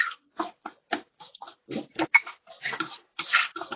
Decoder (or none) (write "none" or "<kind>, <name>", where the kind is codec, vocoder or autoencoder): none